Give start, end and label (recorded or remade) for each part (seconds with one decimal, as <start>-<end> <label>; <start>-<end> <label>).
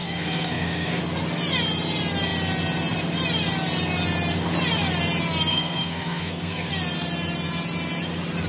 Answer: 0.0-1.0 remade; 1.0-5.5 recorded; 5.5-6.7 remade; 6.7-8.5 recorded